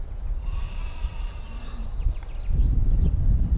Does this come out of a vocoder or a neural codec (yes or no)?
no